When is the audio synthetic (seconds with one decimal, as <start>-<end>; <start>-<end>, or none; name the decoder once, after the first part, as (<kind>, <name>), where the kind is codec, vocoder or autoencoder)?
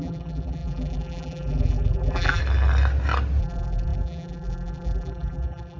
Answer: 0.0-2.4 (vocoder, BigVGAN v2); 3.4-5.8